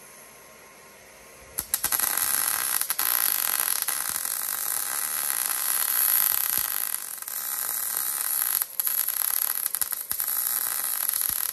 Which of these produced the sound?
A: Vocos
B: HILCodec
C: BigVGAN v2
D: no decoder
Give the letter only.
D